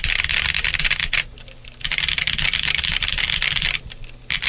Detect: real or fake real